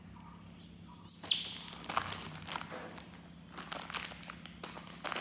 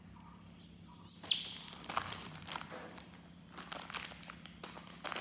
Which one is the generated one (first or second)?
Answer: second